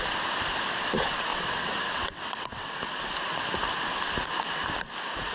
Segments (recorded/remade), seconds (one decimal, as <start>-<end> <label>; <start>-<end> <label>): 0.0-1.3 recorded; 1.3-2.8 remade; 2.8-5.3 recorded